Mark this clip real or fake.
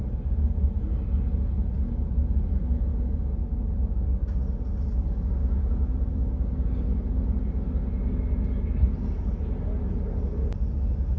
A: real